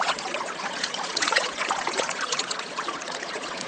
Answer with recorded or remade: remade